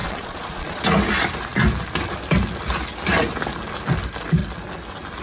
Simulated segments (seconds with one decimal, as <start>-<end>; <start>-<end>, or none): 0.0-0.8